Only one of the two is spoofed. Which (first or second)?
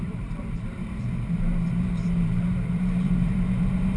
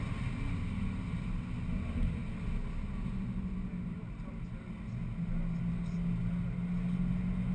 first